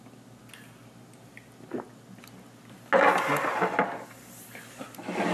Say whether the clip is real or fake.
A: real